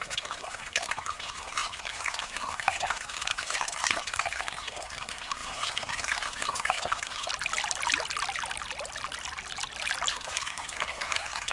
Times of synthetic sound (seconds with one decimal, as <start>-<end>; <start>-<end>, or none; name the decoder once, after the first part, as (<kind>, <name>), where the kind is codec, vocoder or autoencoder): 0.0-7.3 (codec, SNAC); 10.1-11.5